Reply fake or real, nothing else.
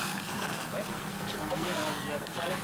fake